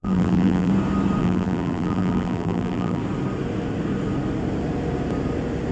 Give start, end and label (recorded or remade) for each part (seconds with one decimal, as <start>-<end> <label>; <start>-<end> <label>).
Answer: 0.0-0.7 remade; 0.7-1.2 recorded; 1.2-3.0 remade; 3.0-5.7 recorded